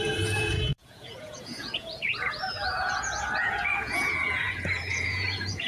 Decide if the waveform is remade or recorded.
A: remade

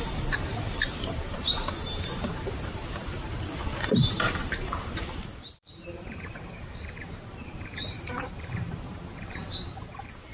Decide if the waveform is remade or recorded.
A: remade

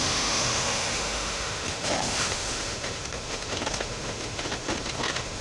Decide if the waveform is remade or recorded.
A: remade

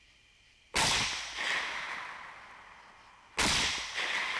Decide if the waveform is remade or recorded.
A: recorded